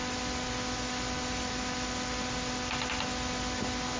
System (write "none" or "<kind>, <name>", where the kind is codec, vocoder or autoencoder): none